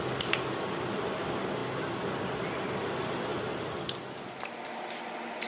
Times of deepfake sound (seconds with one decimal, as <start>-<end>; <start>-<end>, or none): none